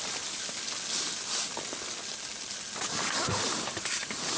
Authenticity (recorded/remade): recorded